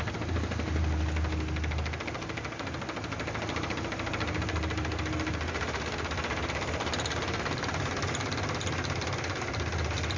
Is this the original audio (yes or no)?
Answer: yes